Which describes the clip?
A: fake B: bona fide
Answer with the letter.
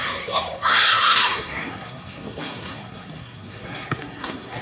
A